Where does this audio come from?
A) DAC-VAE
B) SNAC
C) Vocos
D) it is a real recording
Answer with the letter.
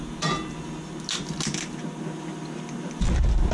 D